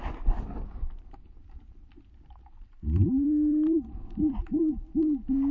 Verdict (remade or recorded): remade